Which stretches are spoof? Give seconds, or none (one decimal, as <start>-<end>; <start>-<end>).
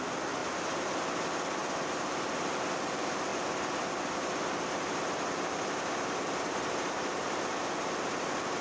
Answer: 0.4-0.9; 1.6-2.2